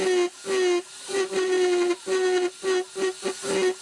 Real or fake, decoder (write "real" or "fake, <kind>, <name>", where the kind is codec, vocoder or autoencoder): real